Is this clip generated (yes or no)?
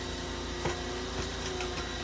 no